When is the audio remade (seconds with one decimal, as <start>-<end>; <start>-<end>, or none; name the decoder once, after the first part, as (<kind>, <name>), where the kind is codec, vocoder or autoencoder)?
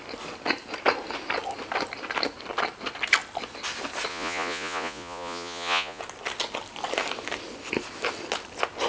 4.1-6.0 (vocoder, Vocos)